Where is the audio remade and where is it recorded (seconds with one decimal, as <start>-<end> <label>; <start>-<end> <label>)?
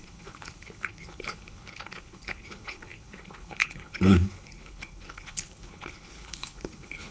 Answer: 0.0-7.1 remade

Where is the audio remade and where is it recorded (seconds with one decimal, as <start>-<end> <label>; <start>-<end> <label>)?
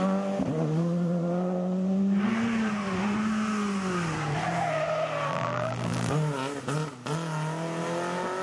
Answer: 0.0-5.3 recorded; 5.3-6.1 remade; 6.1-8.4 recorded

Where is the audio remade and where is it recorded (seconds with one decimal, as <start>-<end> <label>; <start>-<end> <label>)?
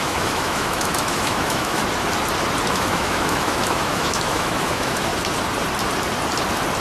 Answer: 0.0-1.8 remade; 1.8-2.7 recorded; 2.7-5.1 remade; 5.1-6.8 recorded